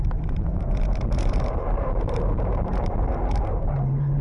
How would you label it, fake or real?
fake